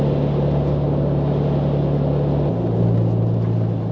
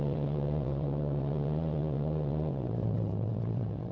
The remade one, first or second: second